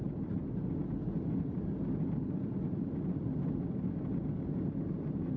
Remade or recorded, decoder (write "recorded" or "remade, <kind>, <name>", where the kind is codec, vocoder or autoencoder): recorded